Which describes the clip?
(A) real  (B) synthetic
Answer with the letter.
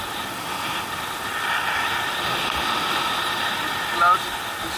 A